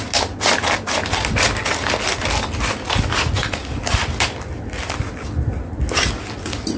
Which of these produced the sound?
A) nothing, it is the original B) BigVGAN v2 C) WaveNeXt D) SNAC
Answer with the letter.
A